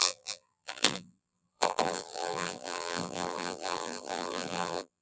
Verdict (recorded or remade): remade